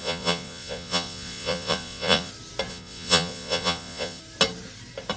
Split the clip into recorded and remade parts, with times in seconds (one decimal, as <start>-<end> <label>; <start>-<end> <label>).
0.0-2.3 remade; 2.3-2.7 recorded; 2.7-4.2 remade; 4.2-5.2 recorded